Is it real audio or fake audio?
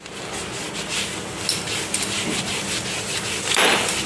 real